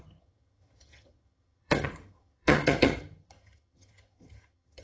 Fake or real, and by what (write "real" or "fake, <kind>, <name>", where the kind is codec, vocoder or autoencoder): fake, vocoder, HiFi-GAN